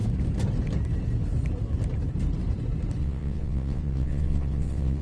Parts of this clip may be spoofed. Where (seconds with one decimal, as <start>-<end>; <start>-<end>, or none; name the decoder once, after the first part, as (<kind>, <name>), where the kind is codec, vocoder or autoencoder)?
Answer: 3.0-5.0 (vocoder, WaveNeXt)